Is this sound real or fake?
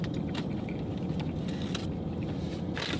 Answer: real